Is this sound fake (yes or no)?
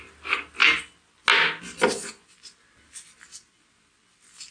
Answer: no